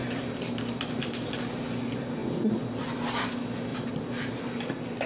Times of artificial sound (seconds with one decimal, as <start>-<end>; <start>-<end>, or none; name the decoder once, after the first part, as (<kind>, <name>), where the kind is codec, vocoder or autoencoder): 0.0-1.7 (vocoder, BigVGAN v2); 3.7-4.3